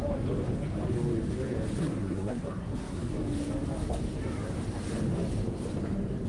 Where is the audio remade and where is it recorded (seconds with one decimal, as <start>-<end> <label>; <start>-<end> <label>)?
0.0-1.8 recorded; 1.8-3.1 remade; 3.1-6.3 recorded